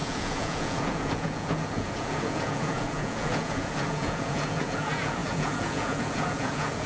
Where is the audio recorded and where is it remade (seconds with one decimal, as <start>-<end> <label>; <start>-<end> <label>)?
0.0-6.9 remade